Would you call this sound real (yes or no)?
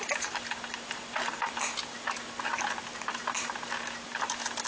yes